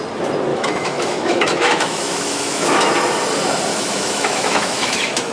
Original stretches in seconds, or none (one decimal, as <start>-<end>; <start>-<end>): 0.0-0.5; 2.9-3.7